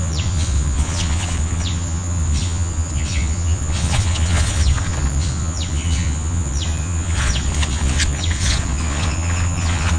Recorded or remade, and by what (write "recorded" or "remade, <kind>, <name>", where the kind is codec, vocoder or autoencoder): remade, vocoder, Vocos